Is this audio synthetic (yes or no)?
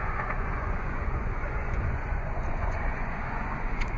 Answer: yes